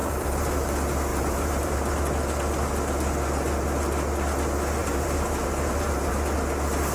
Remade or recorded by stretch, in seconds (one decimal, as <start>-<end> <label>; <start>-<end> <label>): 0.0-0.7 remade; 0.7-1.1 recorded; 1.1-2.0 remade; 2.0-4.8 recorded; 4.8-6.1 remade; 6.1-6.9 recorded